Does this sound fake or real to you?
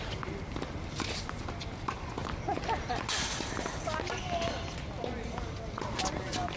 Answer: real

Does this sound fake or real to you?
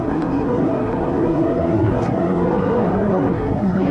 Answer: fake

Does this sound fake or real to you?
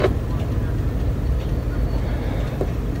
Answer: real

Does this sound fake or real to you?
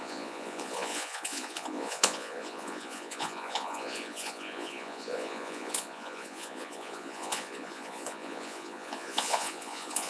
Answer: fake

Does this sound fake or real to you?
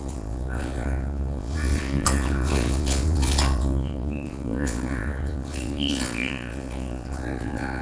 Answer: fake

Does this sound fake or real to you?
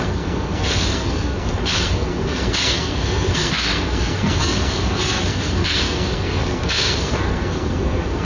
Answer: fake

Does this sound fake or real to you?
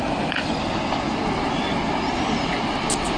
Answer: real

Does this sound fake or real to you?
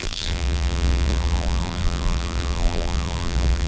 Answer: fake